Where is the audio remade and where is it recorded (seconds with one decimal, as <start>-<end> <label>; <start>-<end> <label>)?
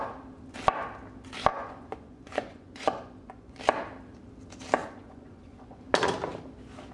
0.0-1.5 recorded; 1.5-3.6 remade; 3.6-4.8 recorded; 4.8-5.8 remade; 5.8-6.9 recorded